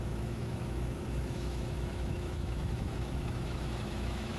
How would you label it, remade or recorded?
remade